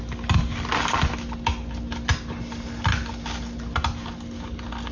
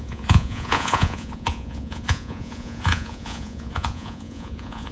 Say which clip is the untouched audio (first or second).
first